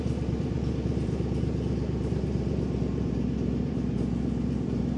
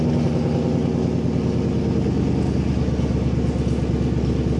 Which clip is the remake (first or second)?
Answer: first